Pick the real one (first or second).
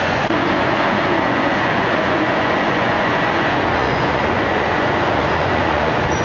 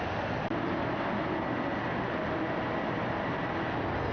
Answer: second